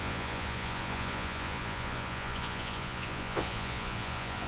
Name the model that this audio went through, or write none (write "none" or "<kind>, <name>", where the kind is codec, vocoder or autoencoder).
vocoder, Vocos